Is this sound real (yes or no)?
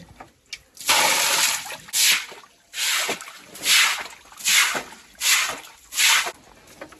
yes